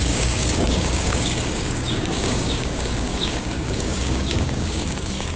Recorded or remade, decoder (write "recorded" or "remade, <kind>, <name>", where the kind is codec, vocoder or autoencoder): remade, codec, DAC